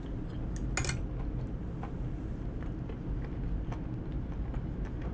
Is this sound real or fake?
real